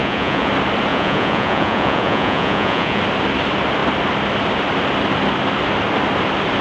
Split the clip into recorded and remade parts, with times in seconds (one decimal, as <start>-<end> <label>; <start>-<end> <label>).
0.0-0.5 remade; 0.5-0.9 recorded; 0.9-3.0 remade; 3.0-6.6 recorded